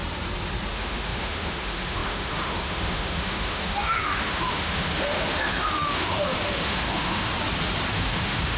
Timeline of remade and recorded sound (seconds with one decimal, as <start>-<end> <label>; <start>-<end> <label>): 0.0-0.7 recorded; 0.7-7.3 remade; 7.3-7.9 recorded; 7.9-8.6 remade